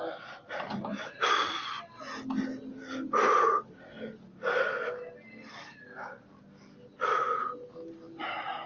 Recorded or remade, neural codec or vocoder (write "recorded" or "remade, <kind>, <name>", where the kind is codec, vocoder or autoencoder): recorded